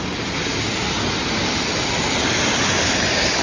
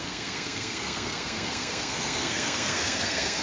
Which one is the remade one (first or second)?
second